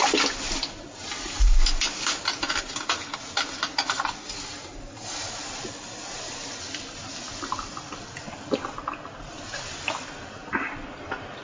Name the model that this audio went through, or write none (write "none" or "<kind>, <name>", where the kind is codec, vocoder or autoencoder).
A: none